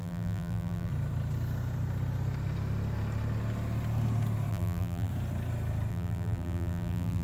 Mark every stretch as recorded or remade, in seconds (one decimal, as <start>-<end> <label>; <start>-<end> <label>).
0.0-0.9 remade; 0.9-4.5 recorded; 4.5-5.1 remade; 5.1-5.9 recorded; 5.9-7.2 remade